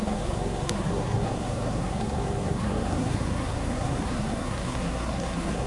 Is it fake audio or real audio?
fake